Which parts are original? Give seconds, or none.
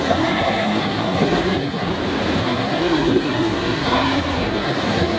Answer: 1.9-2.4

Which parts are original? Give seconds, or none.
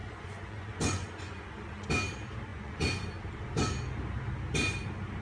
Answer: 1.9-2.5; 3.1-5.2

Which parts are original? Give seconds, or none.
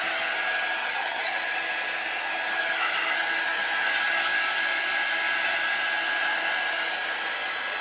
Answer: 0.0-0.8; 1.4-7.8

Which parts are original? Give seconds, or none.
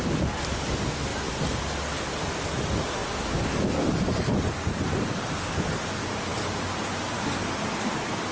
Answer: 0.0-8.3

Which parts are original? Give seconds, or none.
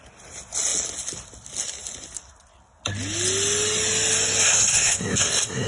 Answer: 0.0-4.7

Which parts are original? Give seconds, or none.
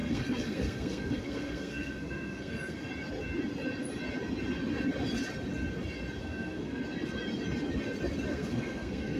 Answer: 2.9-6.2; 6.8-8.3